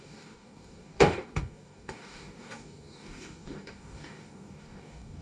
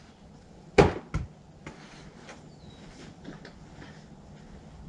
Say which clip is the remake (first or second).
first